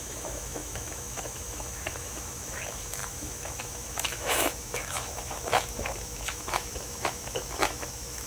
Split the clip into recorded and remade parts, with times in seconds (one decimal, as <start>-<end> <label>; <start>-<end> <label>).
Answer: 0.0-8.3 remade